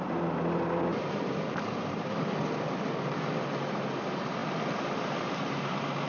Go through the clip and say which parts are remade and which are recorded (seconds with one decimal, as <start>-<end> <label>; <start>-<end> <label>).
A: 0.0-0.9 recorded; 0.9-2.4 remade; 2.4-6.1 recorded